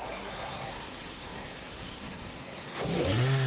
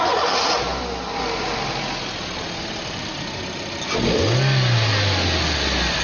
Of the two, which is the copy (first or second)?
first